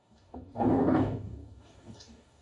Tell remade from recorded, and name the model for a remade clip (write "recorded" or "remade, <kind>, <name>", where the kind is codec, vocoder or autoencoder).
remade, codec, DAC